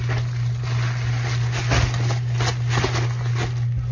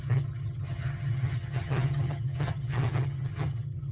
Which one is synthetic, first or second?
second